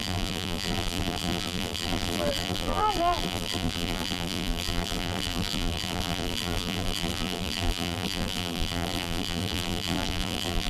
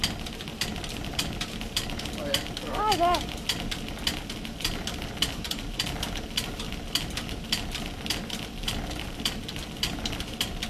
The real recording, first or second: second